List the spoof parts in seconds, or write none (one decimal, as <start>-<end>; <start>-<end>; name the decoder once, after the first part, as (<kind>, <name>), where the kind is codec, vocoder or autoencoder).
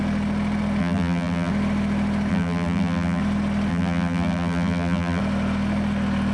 0.8-1.5 (vocoder, BigVGAN v2); 2.3-3.2; 3.7-5.2